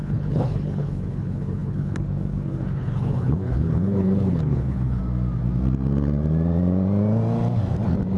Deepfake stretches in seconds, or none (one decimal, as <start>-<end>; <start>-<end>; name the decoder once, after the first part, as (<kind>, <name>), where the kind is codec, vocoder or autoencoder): 0.0-5.0 (codec, HILCodec)